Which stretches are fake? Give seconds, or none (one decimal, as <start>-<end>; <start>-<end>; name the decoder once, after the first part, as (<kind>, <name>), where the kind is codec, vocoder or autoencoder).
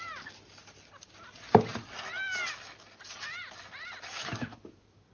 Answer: 4.1-5.1 (autoencoder, DAC-VAE)